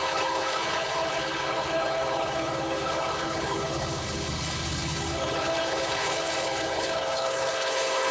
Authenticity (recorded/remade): remade